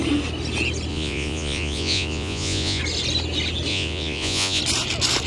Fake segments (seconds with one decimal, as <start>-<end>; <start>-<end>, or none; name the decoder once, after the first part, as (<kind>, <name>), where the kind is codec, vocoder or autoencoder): 0.9-2.8 (vocoder, Vocos); 3.7-4.6